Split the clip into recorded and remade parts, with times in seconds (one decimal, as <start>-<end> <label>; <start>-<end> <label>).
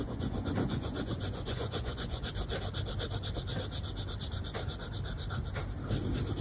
0.0-2.3 remade; 2.3-6.4 recorded